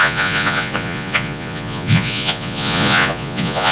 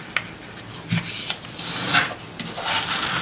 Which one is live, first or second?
second